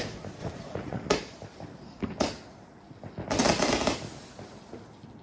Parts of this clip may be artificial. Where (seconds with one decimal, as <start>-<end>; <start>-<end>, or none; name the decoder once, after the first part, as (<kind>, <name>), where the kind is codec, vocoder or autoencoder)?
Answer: 0.4-1.1 (vocoder, Vocos)